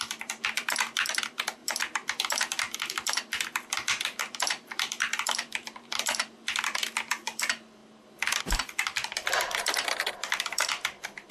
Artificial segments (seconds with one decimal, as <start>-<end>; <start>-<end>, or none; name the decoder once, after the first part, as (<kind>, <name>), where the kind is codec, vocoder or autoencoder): 0.0-1.6 (vocoder, BigVGAN v2); 4.7-7.8; 8.4-11.3